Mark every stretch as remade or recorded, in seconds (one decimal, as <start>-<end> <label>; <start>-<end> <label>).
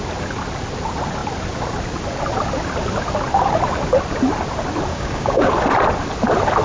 0.0-4.9 recorded; 4.9-5.5 remade; 5.5-6.6 recorded